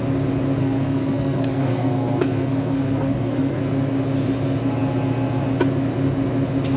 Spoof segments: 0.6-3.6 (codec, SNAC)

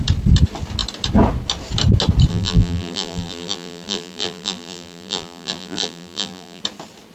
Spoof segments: 2.3-6.6 (vocoder, BigVGAN v2)